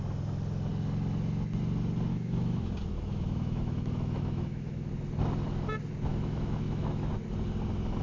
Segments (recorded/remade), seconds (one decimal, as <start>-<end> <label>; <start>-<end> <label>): 0.0-2.1 recorded; 2.1-4.9 remade; 4.9-6.1 recorded; 6.1-7.1 remade; 7.1-8.0 recorded